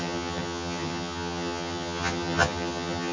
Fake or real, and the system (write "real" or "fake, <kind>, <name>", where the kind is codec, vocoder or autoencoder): fake, vocoder, HiFi-GAN